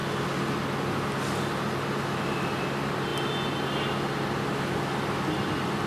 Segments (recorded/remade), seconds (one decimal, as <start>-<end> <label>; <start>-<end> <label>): 0.0-5.9 recorded